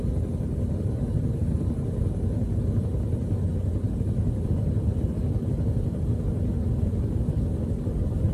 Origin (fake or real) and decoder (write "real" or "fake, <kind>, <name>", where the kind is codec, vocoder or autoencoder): real